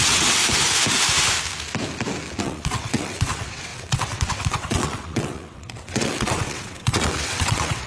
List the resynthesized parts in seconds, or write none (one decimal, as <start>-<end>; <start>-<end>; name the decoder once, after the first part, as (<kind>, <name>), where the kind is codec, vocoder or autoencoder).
0.0-0.4 (vocoder, WaveNeXt); 2.4-7.9